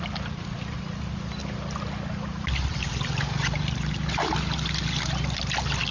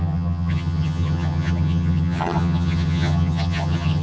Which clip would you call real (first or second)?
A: first